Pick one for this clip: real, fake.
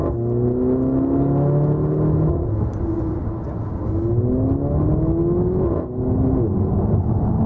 real